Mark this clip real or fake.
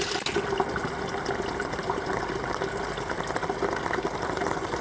real